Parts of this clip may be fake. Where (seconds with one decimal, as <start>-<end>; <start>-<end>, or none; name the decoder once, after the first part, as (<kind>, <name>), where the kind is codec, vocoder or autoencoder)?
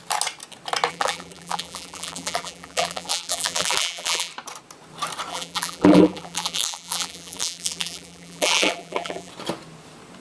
0.9-4.3 (vocoder, BigVGAN v2); 5.3-9.3